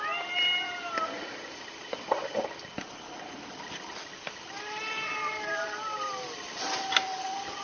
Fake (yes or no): no